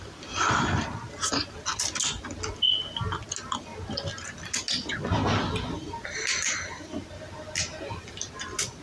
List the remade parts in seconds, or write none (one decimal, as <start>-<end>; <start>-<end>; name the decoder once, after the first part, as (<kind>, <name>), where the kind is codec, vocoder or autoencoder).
none